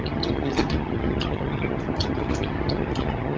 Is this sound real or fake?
fake